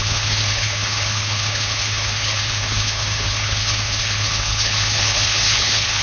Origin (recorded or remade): remade